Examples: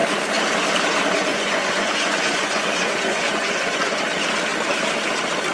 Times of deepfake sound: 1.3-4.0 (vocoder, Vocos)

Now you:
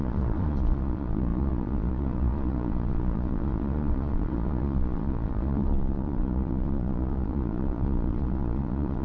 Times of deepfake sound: 0.0-9.0 (vocoder, Vocos)

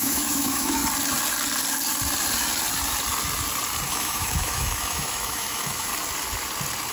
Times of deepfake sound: 0.0-0.8 (autoencoder, DAC-VAE); 3.9-5.9

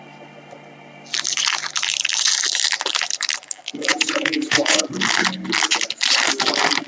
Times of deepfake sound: 3.9-4.8 (vocoder, Vocos)

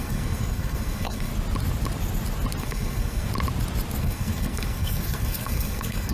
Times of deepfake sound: 0.0-1.3 (codec, SNAC); 2.6-3.3; 4.0-6.1

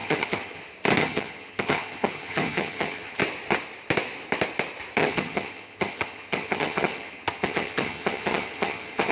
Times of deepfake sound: 0.0-0.6 (vocoder, HiFi-GAN); 1.0-3.2; 5.0-9.1

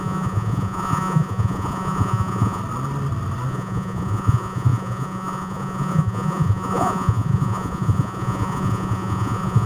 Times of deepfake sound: 0.0-2.6 (vocoder, Vocos); 3.5-9.7

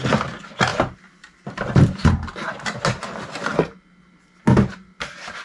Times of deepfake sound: 0.7-2.1 (vocoder, BigVGAN v2)